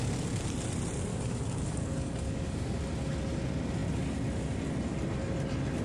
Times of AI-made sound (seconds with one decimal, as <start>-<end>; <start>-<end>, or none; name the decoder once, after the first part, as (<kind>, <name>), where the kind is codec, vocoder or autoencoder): 1.1-2.8 (codec, DAC)